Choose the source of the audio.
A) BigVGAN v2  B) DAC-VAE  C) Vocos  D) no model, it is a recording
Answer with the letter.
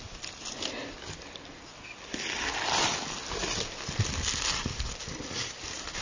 D